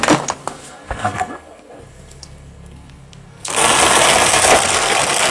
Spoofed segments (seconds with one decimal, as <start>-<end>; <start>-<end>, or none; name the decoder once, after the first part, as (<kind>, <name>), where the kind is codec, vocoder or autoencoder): 0.4-3.6 (codec, SNAC); 4.6-5.3